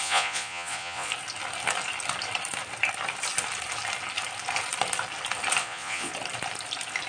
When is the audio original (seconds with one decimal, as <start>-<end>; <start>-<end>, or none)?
1.1-5.6; 6.1-7.1